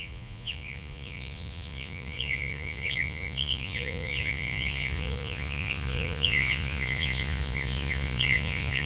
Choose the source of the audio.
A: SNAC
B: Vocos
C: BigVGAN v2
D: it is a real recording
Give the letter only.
B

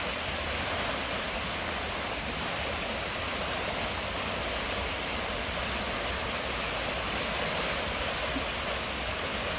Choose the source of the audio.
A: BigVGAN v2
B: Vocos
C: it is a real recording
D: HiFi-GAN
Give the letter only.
C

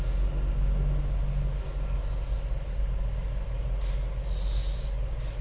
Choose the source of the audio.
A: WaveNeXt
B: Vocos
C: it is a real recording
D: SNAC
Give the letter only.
C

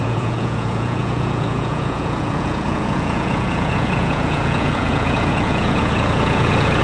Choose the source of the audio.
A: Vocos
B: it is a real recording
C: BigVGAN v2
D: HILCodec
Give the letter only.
A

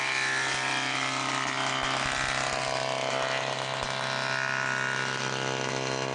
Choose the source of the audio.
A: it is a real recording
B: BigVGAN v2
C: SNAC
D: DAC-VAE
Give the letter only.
A